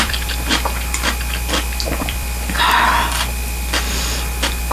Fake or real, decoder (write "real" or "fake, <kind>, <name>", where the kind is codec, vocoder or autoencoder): fake, vocoder, BigVGAN v2